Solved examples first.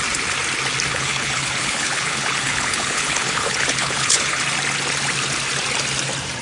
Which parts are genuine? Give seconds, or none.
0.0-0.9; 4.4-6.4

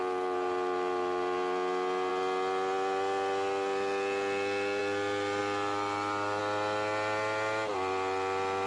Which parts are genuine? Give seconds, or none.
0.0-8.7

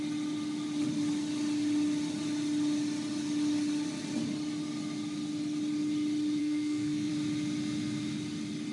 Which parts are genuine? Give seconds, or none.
0.0-6.4; 7.1-8.7

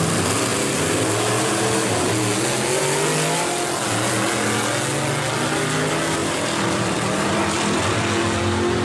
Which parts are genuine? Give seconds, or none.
0.0-6.2; 7.9-8.8

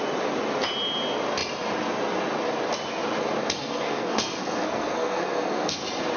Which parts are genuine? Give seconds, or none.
0.0-3.4; 5.8-6.2